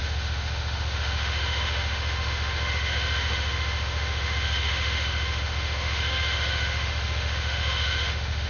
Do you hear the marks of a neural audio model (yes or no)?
yes